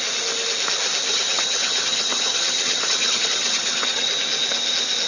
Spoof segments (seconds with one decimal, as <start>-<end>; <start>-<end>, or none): 1.1-4.1